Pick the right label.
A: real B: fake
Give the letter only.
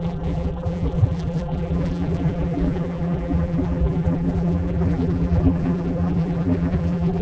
B